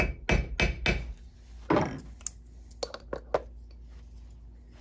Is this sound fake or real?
real